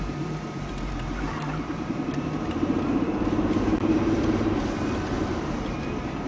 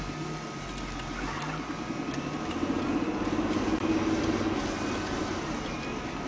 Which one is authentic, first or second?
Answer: second